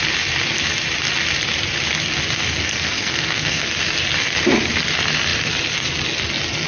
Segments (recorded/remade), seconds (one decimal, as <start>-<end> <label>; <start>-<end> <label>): 0.0-2.6 recorded; 2.6-3.6 remade; 3.6-6.7 recorded